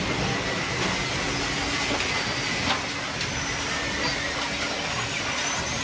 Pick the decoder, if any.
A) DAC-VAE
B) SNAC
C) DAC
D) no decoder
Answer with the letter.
D